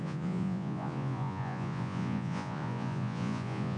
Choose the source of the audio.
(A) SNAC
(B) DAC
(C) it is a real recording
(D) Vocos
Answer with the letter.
D